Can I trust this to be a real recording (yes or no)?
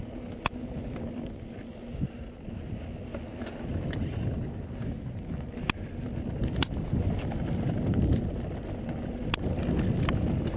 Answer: yes